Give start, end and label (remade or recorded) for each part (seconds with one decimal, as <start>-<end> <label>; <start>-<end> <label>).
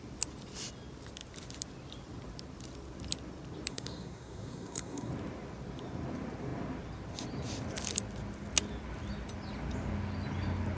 0.0-3.7 recorded; 3.7-5.1 remade; 5.1-10.8 recorded